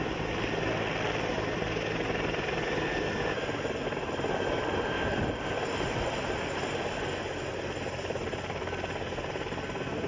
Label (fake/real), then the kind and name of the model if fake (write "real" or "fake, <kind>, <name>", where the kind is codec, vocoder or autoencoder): real